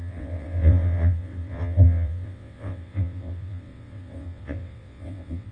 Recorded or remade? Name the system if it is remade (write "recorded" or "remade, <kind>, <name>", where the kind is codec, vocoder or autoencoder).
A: remade, vocoder, WaveNeXt